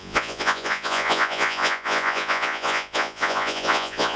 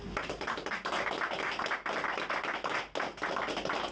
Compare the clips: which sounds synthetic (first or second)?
first